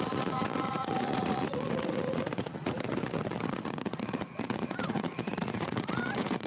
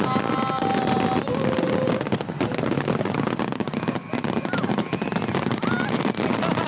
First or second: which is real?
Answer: second